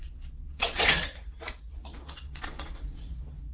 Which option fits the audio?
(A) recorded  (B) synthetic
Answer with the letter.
B